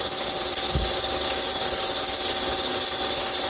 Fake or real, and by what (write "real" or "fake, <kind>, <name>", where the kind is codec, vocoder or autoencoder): real